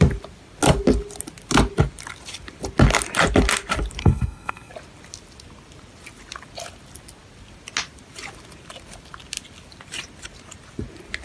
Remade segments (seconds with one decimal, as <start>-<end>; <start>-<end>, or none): 4.0-4.7